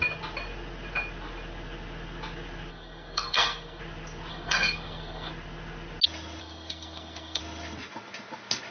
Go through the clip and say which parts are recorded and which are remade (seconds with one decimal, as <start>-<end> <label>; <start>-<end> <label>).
0.0-2.7 recorded; 2.7-3.8 remade; 3.8-4.3 recorded; 4.3-5.3 remade; 5.3-6.4 recorded; 6.4-7.4 remade; 7.4-8.7 recorded